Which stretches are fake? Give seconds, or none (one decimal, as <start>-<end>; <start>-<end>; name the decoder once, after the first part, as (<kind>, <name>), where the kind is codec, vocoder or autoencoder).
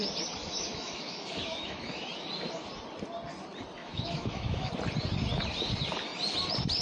0.4-2.1 (autoencoder, DAC-VAE); 3.8-4.7